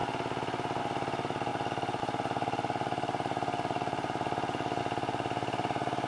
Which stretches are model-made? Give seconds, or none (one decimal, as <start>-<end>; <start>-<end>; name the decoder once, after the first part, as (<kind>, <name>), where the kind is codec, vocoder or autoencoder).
1.5-4.8 (vocoder, BigVGAN v2)